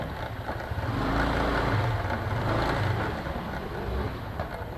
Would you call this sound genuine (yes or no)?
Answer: yes